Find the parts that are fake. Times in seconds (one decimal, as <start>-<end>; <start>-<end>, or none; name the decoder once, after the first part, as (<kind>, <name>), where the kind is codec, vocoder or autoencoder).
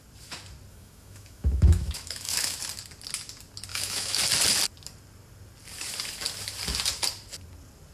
0.7-2.6 (autoencoder, DAC-VAE); 3.7-4.2